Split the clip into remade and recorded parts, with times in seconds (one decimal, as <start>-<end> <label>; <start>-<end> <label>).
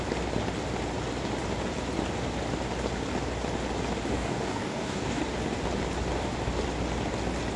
0.0-4.1 recorded; 4.1-5.2 remade; 5.2-7.6 recorded